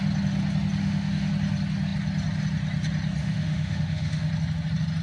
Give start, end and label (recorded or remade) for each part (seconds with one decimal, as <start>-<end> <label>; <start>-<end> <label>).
0.0-0.8 recorded; 0.8-1.3 remade; 1.3-3.2 recorded; 3.2-4.3 remade; 4.3-5.0 recorded